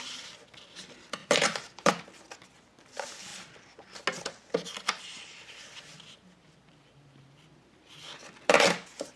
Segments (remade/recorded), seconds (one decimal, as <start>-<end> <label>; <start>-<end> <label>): 0.0-1.2 recorded; 1.2-1.9 remade; 1.9-9.2 recorded